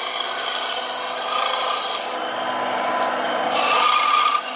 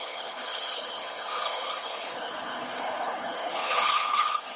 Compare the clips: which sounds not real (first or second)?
second